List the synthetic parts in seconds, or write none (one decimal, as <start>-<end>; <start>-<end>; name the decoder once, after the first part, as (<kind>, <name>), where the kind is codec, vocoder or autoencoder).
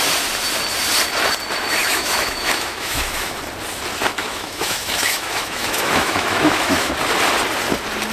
1.8-3.4 (autoencoder, DAC-VAE); 4.2-6.9